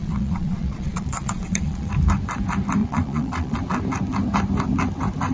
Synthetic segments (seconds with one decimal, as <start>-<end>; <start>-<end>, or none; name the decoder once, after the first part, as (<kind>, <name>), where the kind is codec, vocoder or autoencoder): 0.0-1.9 (vocoder, Vocos); 2.8-3.6